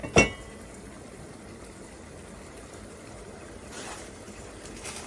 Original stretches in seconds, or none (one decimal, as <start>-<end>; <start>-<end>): 0.0-3.1